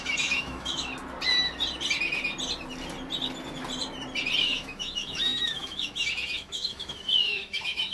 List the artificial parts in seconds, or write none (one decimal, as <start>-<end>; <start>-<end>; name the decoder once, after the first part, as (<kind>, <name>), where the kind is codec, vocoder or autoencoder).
0.0-0.9 (autoencoder, DAC-VAE); 4.4-7.9